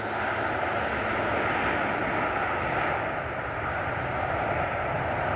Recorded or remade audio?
recorded